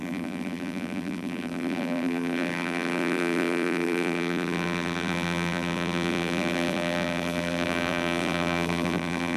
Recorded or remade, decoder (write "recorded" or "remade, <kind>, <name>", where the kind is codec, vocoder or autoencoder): remade, vocoder, BigVGAN v2